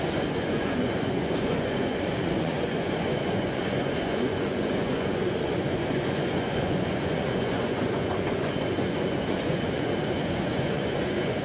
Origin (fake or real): fake